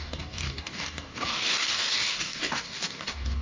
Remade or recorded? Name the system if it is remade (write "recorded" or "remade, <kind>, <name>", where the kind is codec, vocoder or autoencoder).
remade, codec, DAC